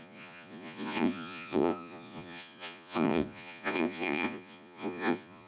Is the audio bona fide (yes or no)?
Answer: no